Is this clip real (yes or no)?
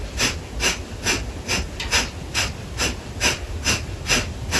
yes